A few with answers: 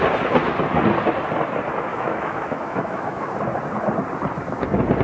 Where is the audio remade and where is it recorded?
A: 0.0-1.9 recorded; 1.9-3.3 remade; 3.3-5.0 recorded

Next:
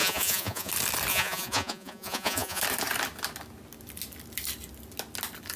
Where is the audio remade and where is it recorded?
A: 0.0-0.7 remade; 0.7-1.1 recorded; 1.1-2.6 remade; 2.6-5.6 recorded

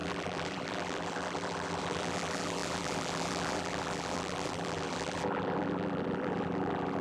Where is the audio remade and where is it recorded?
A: 0.0-7.0 remade

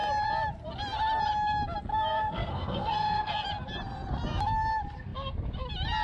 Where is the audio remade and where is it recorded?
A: 0.0-1.9 recorded; 1.9-3.3 remade; 3.3-6.0 recorded

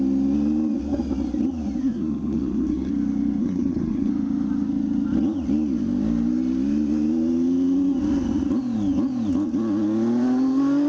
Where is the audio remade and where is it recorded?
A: 0.0-1.8 recorded; 1.8-2.9 remade; 2.9-3.4 recorded; 3.4-4.1 remade; 4.1-10.9 recorded

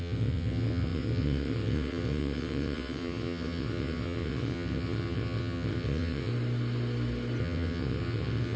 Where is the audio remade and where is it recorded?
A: 0.0-6.3 remade; 6.3-7.4 recorded; 7.4-8.6 remade

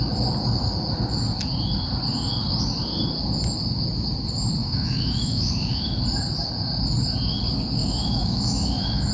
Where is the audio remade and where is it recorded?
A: 0.0-4.6 recorded; 4.6-6.0 remade; 6.0-7.8 recorded; 7.8-9.1 remade